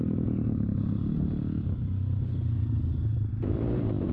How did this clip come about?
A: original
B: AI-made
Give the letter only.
A